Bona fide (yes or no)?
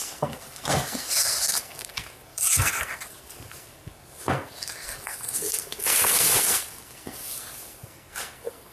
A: no